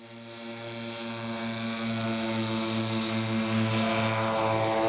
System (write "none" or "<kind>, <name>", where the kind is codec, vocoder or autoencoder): none